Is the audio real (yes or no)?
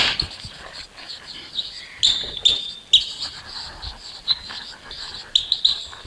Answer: yes